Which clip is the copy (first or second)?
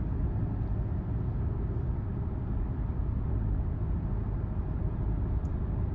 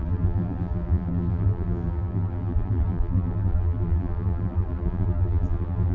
second